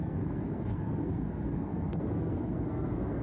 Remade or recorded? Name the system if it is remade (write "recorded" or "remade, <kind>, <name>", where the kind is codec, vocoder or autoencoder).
remade, codec, SNAC